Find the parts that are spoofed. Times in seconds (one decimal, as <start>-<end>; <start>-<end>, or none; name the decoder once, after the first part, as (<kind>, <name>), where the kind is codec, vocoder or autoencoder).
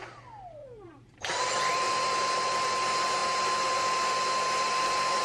0.6-1.9 (vocoder, BigVGAN v2)